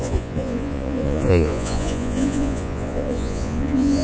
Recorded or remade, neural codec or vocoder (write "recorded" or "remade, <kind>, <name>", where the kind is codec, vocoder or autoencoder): remade, vocoder, Vocos